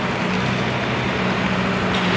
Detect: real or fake real